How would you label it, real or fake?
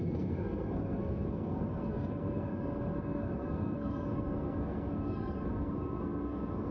fake